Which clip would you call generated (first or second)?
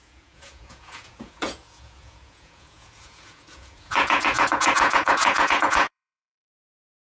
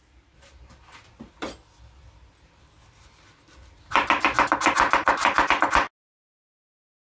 first